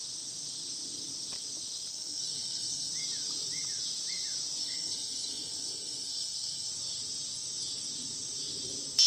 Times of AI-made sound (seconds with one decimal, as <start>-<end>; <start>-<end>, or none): 1.9-2.9; 4.6-6.7